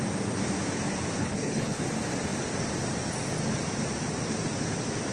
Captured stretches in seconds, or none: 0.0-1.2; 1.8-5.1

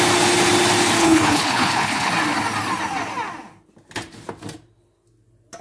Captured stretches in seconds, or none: 0.0-1.0; 2.1-5.6

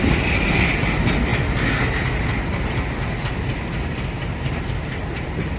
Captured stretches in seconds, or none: 0.0-5.6

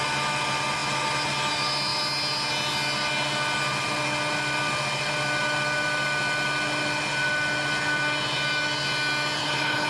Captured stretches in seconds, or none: 0.0-9.4